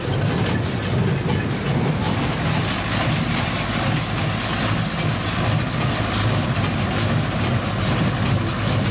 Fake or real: real